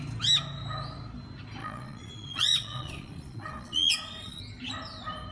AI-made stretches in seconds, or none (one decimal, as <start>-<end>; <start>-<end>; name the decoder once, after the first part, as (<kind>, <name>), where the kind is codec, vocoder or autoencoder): 1.6-4.4 (vocoder, Vocos)